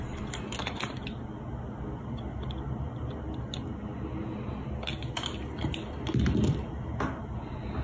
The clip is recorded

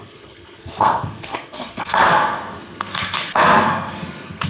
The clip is remade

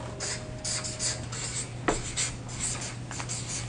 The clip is recorded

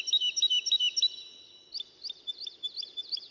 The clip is recorded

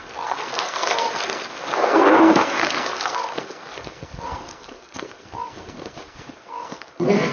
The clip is remade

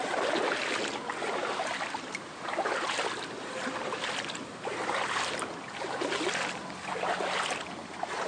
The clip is recorded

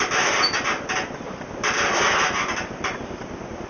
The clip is recorded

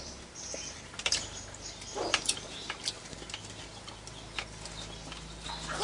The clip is recorded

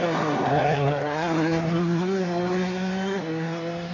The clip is remade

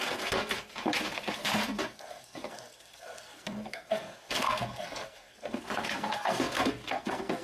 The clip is remade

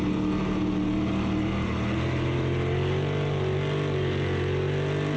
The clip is recorded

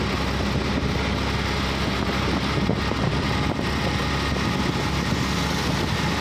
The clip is recorded